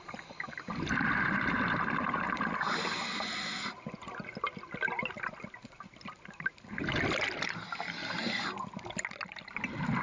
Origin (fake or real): real